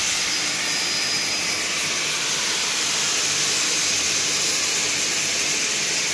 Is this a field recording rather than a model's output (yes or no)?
yes